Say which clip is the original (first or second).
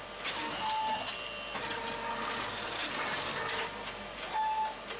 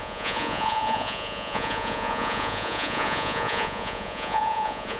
first